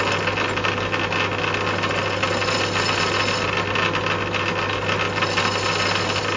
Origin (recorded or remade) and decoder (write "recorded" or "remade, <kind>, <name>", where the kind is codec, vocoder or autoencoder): recorded